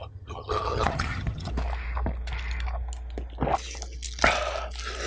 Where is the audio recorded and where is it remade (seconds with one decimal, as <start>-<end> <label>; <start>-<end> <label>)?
0.0-1.5 remade; 1.5-5.1 recorded